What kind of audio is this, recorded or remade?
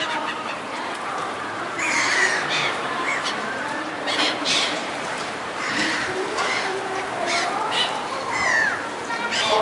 remade